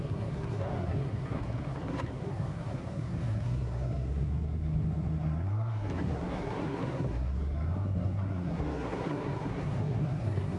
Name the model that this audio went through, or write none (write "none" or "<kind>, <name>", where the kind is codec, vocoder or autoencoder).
codec, SNAC